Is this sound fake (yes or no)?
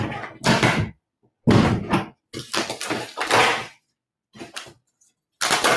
no